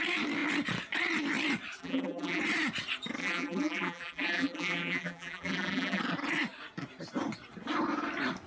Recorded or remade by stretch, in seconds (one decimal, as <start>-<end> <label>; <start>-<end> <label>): 0.0-1.8 recorded; 1.8-2.4 remade; 2.4-3.2 recorded; 3.2-6.0 remade; 6.0-8.5 recorded